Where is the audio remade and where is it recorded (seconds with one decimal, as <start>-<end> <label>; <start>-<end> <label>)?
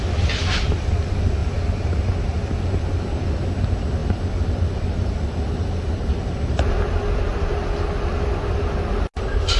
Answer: 0.0-9.6 recorded